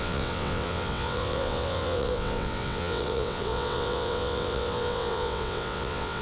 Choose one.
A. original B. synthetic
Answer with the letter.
B